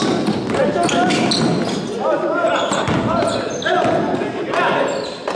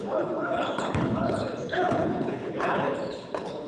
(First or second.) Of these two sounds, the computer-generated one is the second